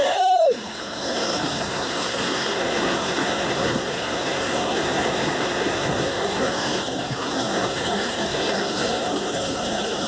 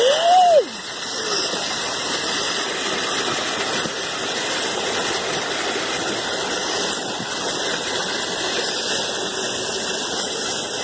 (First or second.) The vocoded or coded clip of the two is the first